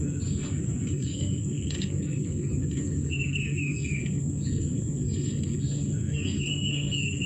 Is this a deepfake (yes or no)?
yes